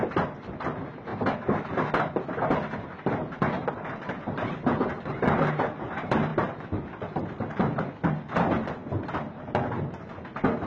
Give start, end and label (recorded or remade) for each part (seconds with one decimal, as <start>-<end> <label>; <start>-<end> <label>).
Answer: 0.0-10.7 recorded